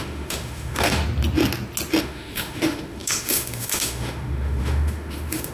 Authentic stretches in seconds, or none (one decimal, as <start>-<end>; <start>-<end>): 1.0-2.0